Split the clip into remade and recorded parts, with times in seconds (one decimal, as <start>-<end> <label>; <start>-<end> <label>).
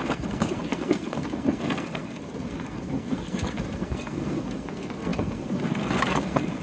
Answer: 0.0-6.6 remade